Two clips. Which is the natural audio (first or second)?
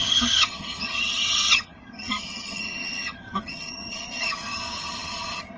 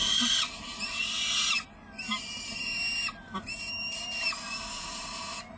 second